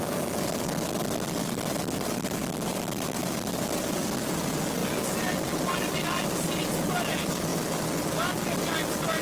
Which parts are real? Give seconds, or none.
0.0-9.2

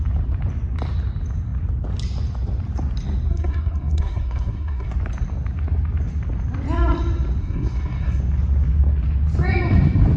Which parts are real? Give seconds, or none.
0.0-3.3; 4.9-7.4; 8.2-10.2

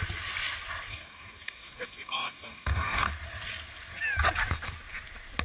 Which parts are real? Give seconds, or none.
0.0-0.9; 3.1-5.4

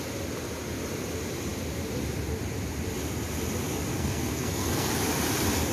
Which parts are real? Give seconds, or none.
0.0-3.9; 4.9-5.7

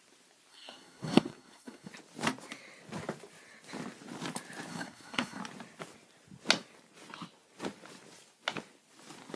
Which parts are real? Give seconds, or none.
0.0-0.5; 1.9-4.7; 5.4-9.4

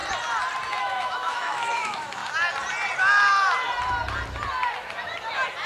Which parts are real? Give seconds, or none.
0.0-0.8; 2.2-5.7

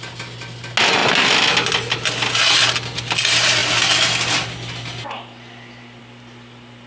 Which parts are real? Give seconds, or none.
0.0-6.9